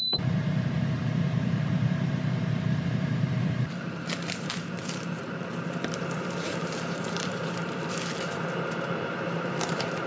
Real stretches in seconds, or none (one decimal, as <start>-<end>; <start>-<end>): 7.6-9.1